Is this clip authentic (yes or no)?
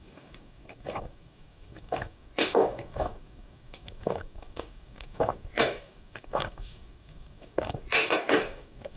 no